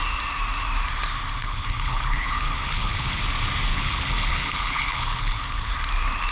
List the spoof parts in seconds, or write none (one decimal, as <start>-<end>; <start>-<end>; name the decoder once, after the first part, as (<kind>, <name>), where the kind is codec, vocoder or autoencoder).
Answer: 1.4-3.2 (codec, HILCodec); 3.7-5.7